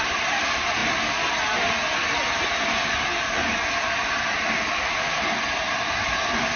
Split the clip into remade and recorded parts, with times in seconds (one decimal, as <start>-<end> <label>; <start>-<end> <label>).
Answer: 0.0-6.6 recorded